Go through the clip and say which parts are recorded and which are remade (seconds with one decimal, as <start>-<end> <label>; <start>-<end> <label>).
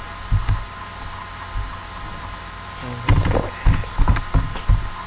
0.0-2.1 recorded; 2.1-4.2 remade; 4.2-5.1 recorded